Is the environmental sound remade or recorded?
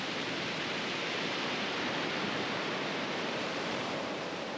remade